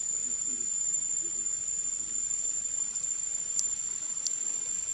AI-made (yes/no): no